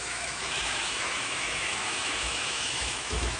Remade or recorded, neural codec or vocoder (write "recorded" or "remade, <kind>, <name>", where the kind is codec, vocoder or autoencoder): remade, autoencoder, DAC-VAE